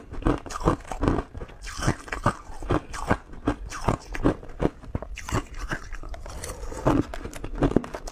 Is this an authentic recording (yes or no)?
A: yes